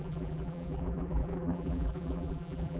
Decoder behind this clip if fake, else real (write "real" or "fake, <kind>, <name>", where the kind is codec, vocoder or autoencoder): fake, vocoder, BigVGAN v2